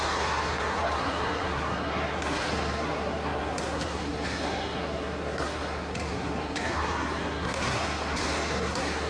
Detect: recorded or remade remade